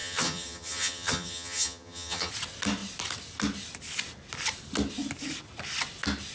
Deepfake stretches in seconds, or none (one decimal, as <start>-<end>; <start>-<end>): 0.0-2.3